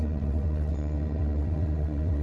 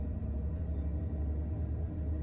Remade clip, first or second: first